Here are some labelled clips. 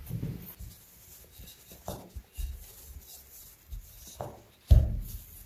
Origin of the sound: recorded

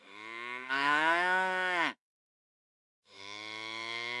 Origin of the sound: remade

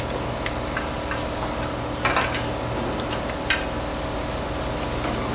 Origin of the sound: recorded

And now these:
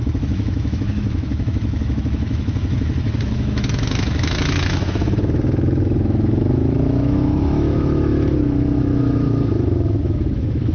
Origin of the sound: remade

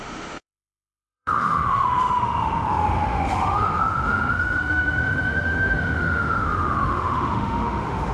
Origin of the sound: remade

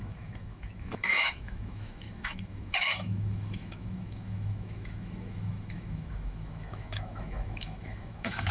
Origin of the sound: remade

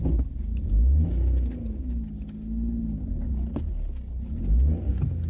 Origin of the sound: recorded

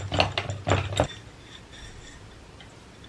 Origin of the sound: recorded